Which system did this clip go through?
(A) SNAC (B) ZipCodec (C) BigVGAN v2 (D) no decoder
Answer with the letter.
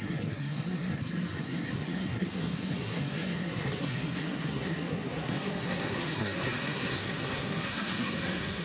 A